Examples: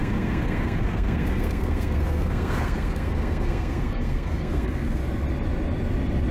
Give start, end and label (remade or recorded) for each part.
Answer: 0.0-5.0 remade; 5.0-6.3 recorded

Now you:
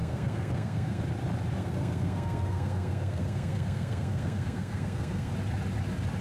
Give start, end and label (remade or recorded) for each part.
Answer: 0.0-1.0 remade; 1.0-1.6 recorded; 1.6-5.3 remade; 5.3-6.2 recorded

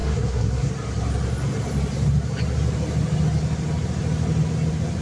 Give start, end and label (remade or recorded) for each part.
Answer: 0.0-0.7 remade; 0.7-5.0 recorded

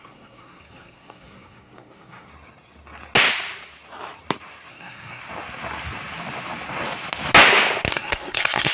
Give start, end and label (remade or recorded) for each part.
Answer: 0.0-2.3 remade; 2.3-4.7 recorded; 4.7-5.2 remade; 5.2-7.9 recorded; 7.9-8.7 remade

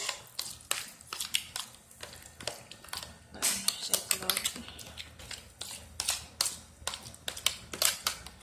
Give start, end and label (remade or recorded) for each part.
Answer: 0.0-8.4 recorded

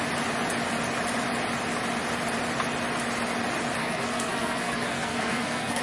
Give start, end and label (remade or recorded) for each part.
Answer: 0.0-3.8 recorded; 3.8-5.8 remade